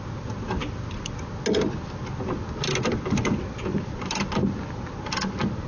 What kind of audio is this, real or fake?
real